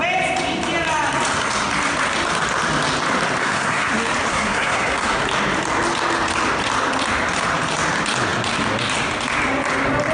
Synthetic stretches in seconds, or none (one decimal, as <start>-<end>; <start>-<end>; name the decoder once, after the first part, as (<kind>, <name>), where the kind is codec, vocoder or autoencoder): 3.4-3.9 (codec, SNAC); 4.3-5.2